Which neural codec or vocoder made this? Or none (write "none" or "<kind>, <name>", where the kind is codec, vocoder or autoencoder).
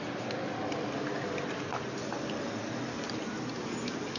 none